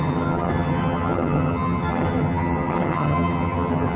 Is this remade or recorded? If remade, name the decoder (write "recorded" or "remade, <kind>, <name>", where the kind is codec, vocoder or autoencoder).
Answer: remade, vocoder, HiFi-GAN